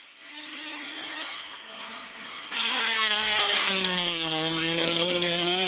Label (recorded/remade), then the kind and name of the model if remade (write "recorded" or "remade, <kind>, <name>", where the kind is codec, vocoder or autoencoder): remade, codec, SNAC